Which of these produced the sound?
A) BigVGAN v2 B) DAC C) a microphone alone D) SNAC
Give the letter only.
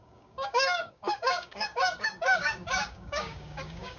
B